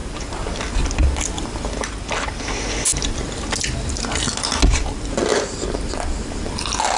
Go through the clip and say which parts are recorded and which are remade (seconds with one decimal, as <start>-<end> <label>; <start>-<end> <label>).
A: 0.0-7.0 recorded